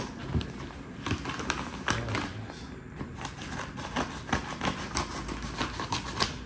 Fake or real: real